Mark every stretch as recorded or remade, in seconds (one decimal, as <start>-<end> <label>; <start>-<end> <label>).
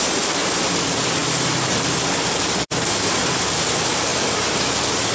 0.0-5.1 recorded